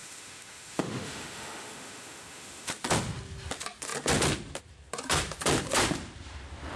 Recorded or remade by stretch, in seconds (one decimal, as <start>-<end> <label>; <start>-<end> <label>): 0.0-2.7 remade; 2.7-6.8 recorded